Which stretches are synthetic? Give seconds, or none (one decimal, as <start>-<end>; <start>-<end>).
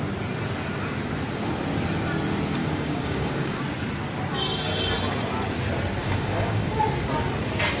2.6-3.6; 6.0-6.8